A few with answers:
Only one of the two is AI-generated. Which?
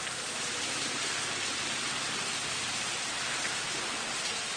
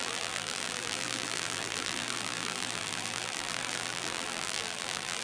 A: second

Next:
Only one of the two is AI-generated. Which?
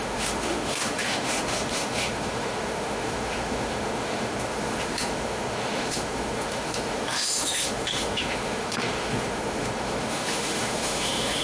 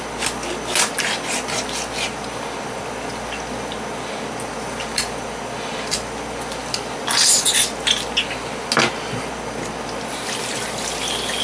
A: first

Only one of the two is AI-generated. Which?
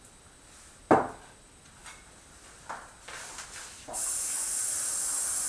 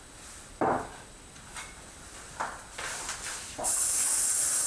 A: second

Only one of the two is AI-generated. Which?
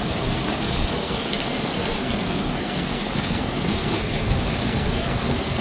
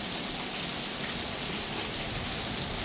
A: first